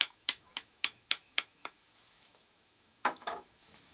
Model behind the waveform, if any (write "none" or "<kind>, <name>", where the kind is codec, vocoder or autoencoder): autoencoder, DAC-VAE